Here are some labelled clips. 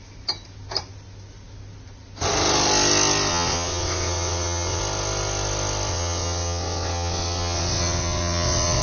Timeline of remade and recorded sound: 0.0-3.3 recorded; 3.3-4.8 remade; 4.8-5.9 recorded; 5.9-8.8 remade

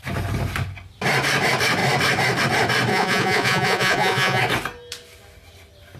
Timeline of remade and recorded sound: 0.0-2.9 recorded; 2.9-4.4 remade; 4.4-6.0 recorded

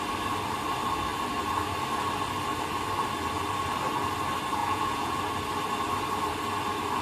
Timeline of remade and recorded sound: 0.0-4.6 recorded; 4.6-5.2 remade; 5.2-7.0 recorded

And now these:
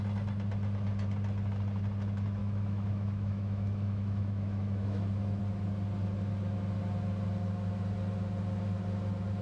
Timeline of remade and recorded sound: 0.0-2.4 recorded; 2.4-5.4 remade; 5.4-9.4 recorded

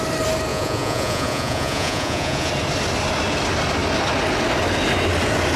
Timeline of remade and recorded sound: 0.0-0.5 recorded; 0.5-2.5 remade; 2.5-5.6 recorded

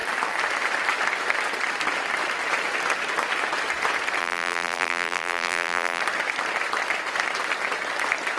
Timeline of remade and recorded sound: 0.0-4.2 recorded; 4.2-6.0 remade; 6.0-8.4 recorded